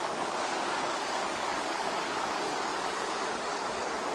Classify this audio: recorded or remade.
remade